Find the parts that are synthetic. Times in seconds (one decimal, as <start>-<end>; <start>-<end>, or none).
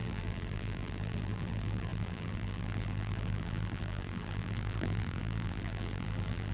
0.0-6.5